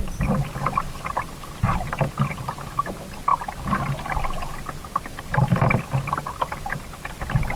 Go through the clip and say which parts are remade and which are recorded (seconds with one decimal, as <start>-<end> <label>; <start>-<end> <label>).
0.0-7.6 recorded